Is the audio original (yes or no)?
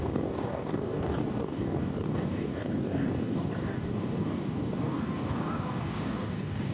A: no